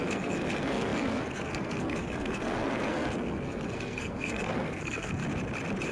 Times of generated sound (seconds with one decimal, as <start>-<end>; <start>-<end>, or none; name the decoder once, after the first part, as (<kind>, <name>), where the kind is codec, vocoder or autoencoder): 0.0-5.2 (codec, SNAC)